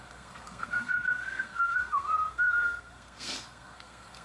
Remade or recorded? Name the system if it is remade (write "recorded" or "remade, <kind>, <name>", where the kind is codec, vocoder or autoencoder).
remade, codec, SNAC